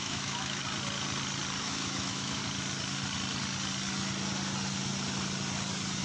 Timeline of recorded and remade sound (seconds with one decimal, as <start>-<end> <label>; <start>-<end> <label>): 0.0-0.6 remade; 0.6-1.6 recorded; 1.6-2.4 remade; 2.4-6.0 recorded